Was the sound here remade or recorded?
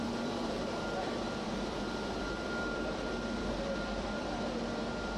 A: remade